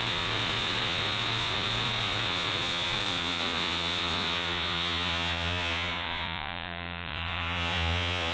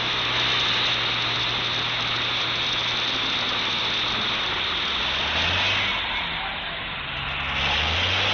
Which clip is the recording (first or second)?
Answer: second